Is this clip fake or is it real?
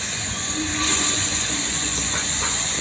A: fake